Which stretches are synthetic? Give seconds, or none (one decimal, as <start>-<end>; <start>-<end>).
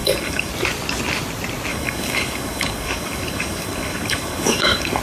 0.0-0.5; 1.7-5.0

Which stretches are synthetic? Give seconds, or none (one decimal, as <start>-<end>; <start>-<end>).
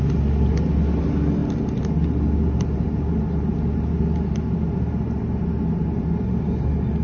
none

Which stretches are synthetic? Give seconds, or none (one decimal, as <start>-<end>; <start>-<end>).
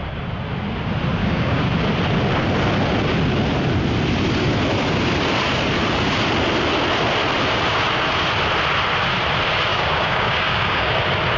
1.2-1.7; 9.7-11.0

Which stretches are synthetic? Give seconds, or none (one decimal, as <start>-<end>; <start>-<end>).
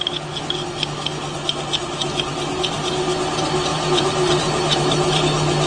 3.7-5.2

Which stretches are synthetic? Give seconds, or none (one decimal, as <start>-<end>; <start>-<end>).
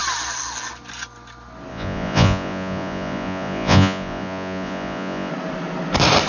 1.7-5.3